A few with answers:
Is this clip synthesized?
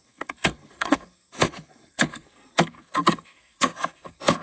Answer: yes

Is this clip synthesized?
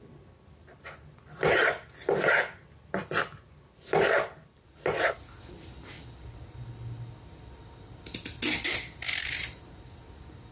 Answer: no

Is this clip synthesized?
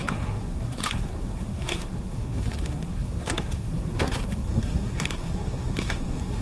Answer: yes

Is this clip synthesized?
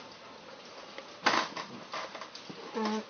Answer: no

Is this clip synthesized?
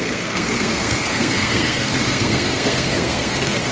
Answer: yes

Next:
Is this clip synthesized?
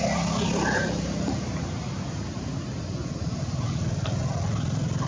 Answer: no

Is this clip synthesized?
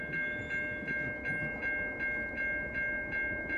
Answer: no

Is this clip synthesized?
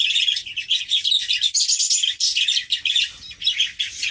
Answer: no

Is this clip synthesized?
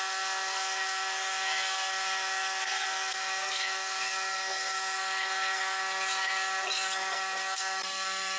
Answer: yes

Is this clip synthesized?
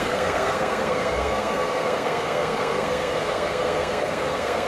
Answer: yes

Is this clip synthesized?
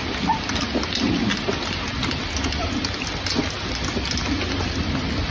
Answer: no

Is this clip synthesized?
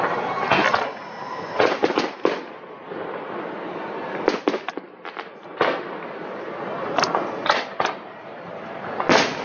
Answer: no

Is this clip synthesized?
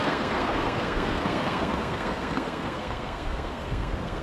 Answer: yes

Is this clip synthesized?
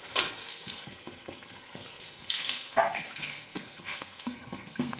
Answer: yes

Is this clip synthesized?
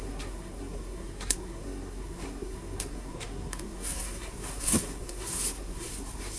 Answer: yes